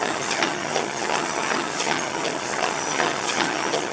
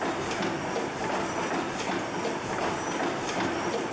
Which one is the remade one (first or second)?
first